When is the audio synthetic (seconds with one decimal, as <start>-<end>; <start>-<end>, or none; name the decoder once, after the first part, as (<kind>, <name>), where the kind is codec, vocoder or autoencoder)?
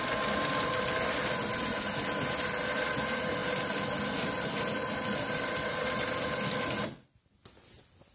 none